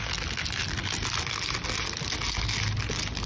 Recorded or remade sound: recorded